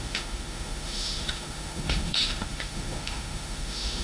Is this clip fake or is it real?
fake